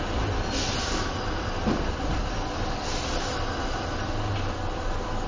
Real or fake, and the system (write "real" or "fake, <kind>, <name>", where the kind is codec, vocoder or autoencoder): real